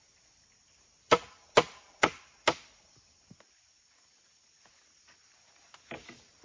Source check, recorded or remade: recorded